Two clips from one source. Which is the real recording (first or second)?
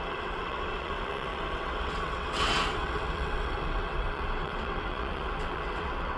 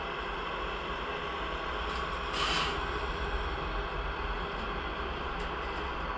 second